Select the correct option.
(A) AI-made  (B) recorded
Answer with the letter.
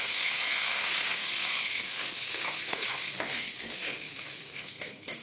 A